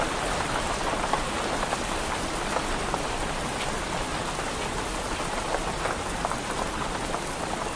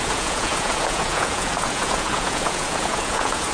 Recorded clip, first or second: first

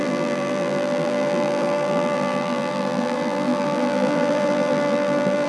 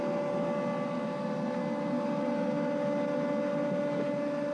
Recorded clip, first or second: second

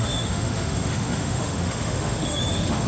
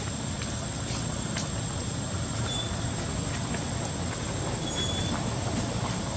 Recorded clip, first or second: second